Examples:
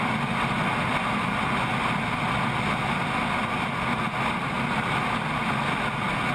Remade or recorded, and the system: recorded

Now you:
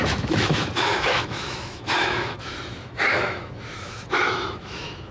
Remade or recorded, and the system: remade, autoencoder, DAC-VAE